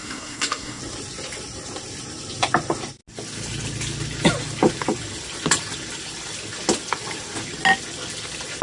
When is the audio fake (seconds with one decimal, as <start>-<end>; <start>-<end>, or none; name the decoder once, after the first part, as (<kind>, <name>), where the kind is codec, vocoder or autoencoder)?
0.0-0.8 (codec, SNAC)